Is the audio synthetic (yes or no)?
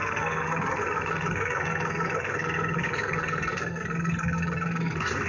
yes